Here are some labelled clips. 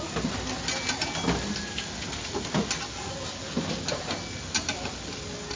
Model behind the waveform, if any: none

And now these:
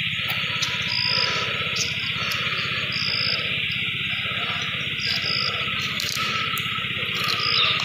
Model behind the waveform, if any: none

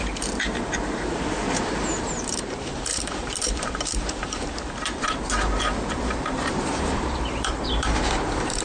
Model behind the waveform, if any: vocoder, BigVGAN v2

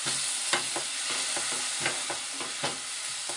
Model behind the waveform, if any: none